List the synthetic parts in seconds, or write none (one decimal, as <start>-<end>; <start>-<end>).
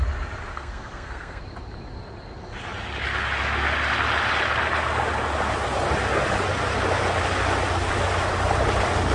0.5-1.4